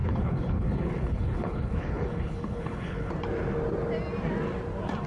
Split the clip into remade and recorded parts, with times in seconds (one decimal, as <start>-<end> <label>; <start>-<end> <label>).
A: 0.0-3.1 remade; 3.1-5.1 recorded